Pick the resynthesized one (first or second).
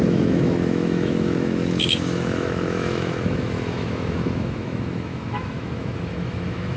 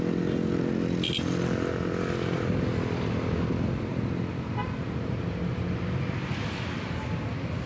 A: first